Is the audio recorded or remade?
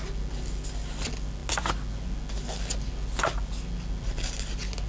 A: recorded